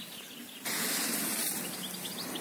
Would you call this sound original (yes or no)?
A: yes